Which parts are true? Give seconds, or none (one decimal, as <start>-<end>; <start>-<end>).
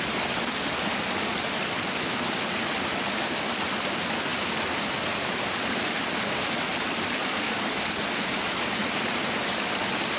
0.0-7.2; 8.0-10.2